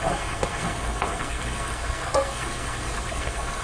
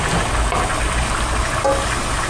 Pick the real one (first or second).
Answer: second